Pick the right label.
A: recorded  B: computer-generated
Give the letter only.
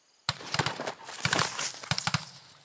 A